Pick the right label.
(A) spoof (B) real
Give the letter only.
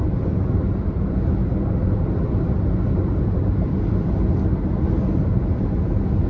B